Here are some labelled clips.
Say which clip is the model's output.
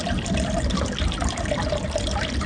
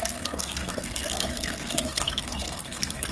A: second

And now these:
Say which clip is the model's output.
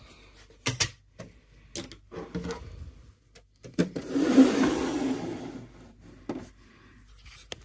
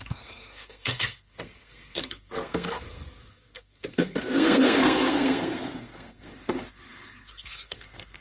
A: second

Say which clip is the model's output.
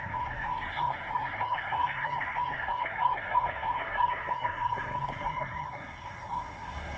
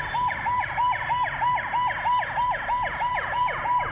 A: first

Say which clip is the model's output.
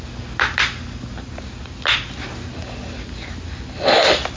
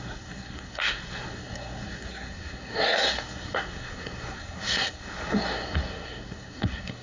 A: second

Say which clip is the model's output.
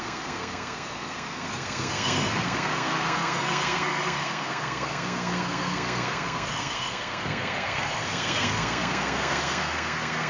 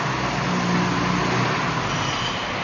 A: first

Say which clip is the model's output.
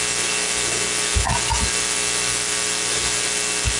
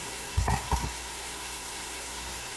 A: second